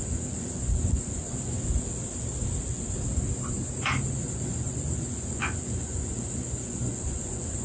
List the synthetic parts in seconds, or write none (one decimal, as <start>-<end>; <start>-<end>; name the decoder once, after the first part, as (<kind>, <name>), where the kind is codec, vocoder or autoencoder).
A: 0.0-1.5 (vocoder, Vocos); 4.1-7.6